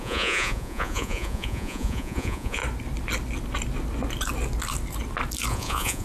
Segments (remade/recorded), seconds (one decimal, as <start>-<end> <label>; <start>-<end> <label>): 0.0-2.6 remade; 2.6-5.5 recorded; 5.5-6.0 remade